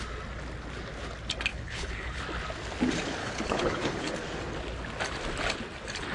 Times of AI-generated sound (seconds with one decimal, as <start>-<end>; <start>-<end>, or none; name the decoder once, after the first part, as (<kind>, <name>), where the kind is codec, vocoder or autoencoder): 1.5-2.2 (codec, HILCodec); 3.2-4.1